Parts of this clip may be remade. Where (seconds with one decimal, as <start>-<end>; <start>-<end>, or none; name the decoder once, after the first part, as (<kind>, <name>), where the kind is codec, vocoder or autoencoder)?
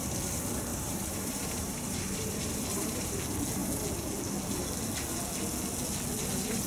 0.7-3.1 (vocoder, BigVGAN v2)